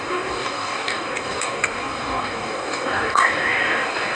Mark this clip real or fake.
fake